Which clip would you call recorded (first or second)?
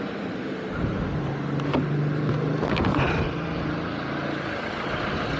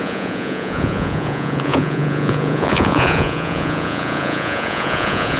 first